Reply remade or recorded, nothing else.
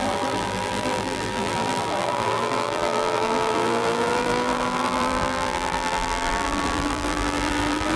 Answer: remade